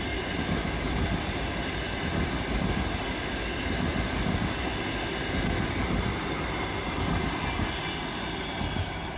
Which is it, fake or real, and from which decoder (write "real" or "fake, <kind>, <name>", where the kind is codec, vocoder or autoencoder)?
real